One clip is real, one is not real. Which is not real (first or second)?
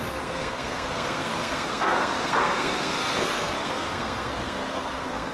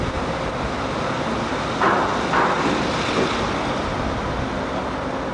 first